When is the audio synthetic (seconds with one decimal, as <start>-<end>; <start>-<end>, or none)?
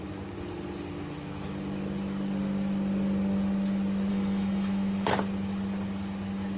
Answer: 4.1-5.1